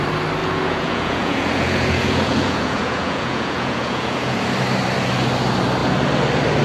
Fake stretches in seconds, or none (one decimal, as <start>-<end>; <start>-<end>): 0.4-4.4